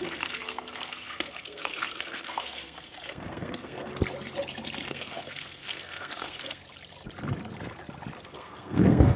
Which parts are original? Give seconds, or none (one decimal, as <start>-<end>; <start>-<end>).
3.9-4.9; 6.6-8.2